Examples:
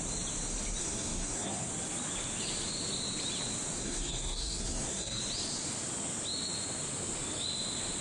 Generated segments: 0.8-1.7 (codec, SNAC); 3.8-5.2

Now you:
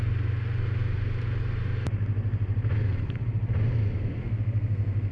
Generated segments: 4.2-5.1 (codec, SNAC)

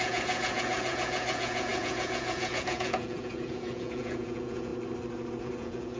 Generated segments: 0.0-4.7 (vocoder, Vocos); 5.4-6.0